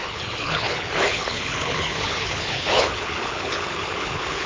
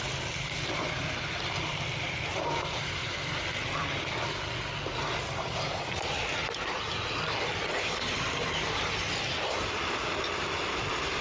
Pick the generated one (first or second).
first